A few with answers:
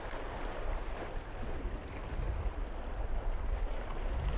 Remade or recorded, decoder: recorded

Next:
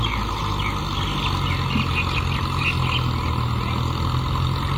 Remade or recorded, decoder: recorded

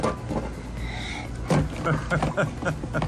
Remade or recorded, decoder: recorded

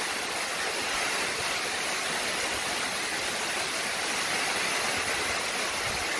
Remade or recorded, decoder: recorded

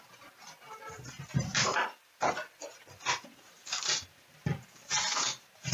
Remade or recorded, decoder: remade, vocoder, BigVGAN v2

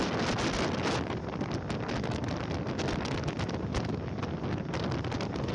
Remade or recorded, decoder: recorded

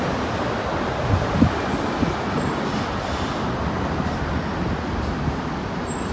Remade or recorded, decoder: recorded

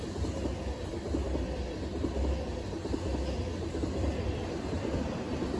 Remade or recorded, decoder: recorded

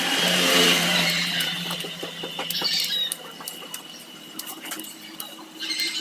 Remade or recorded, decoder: remade, vocoder, BigVGAN v2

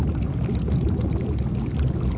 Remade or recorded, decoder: recorded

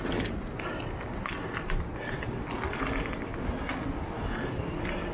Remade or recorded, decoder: recorded